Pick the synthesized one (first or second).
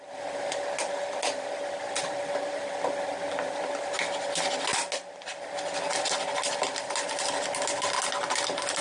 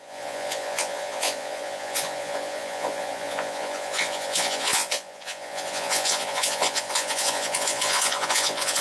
second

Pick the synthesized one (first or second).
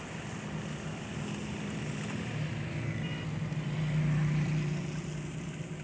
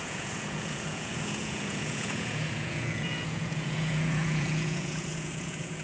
second